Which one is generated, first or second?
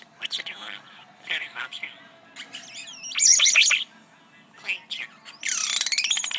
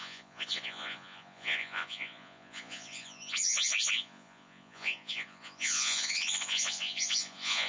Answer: second